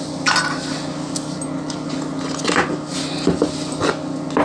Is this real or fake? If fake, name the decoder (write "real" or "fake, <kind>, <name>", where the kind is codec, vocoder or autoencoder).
real